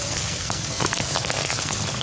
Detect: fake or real fake